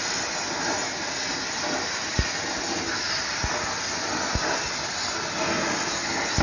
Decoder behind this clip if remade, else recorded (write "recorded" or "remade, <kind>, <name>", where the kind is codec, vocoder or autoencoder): recorded